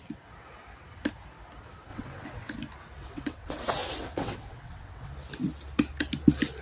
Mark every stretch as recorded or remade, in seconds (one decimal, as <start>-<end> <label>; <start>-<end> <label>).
0.0-1.9 recorded; 1.9-2.5 remade; 2.5-3.0 recorded; 3.0-5.1 remade; 5.1-6.6 recorded